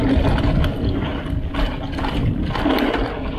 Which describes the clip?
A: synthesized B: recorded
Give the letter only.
B